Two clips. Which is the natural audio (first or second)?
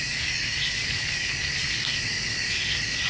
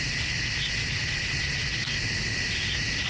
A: second